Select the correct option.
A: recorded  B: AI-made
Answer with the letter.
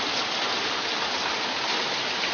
A